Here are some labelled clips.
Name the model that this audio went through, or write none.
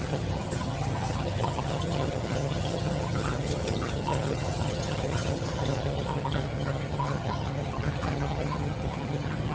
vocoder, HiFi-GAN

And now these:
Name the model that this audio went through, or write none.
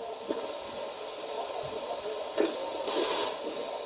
none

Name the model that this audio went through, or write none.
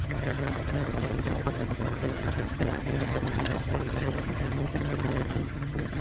vocoder, HiFi-GAN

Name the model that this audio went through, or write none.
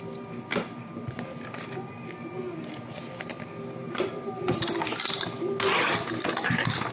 none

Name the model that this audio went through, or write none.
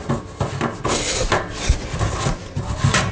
none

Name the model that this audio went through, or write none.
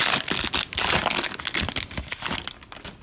none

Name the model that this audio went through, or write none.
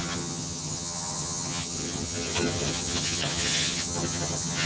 vocoder, HiFi-GAN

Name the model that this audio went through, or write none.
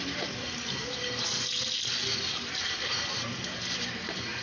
none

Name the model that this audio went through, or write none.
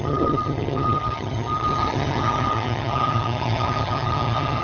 vocoder, HiFi-GAN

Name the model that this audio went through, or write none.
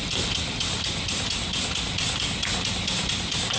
none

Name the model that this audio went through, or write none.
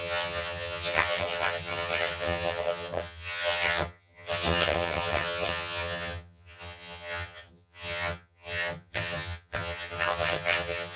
vocoder, HiFi-GAN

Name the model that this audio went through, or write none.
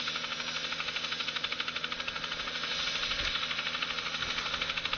none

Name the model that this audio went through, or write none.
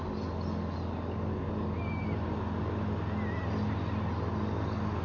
none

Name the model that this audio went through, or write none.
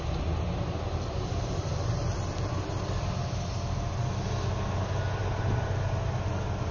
none